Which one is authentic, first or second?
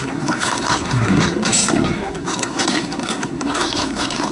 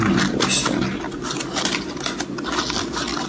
second